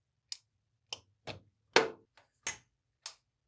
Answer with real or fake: real